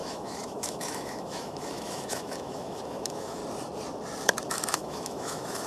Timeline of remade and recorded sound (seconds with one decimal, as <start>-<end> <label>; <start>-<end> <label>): 0.0-3.4 remade; 3.4-4.5 recorded; 4.5-5.7 remade

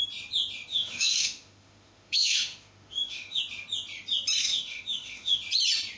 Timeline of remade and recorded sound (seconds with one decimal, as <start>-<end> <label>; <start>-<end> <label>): 0.0-0.7 recorded; 0.7-3.4 remade; 3.4-4.4 recorded; 4.4-5.4 remade; 5.4-6.0 recorded